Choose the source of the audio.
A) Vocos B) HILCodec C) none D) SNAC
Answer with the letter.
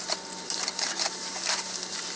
C